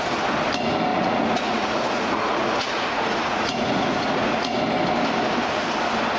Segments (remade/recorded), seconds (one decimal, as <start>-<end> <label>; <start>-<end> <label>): 0.0-0.9 recorded; 0.9-4.6 remade; 4.6-6.2 recorded